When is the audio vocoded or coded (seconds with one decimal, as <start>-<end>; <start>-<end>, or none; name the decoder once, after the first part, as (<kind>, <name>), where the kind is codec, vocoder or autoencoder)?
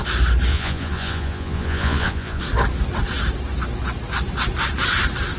0.5-2.4 (vocoder, Vocos)